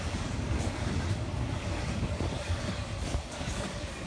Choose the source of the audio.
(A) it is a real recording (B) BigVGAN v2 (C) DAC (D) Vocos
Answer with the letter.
C